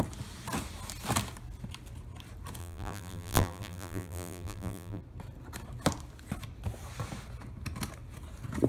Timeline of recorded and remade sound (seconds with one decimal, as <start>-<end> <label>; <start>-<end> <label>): 0.0-2.6 recorded; 2.6-5.0 remade; 5.0-8.7 recorded